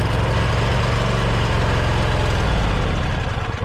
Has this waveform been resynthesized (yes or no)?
no